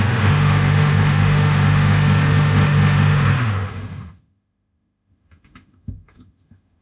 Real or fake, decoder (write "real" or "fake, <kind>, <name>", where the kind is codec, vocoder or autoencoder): fake, autoencoder, DAC-VAE